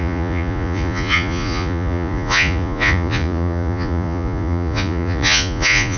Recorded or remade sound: remade